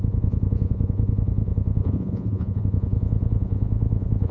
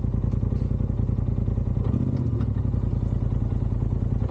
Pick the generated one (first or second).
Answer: first